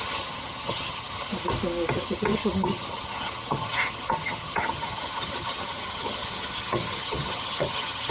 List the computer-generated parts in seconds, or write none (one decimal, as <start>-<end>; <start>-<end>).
0.0-1.3; 1.9-8.1